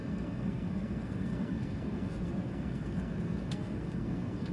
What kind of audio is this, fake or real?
fake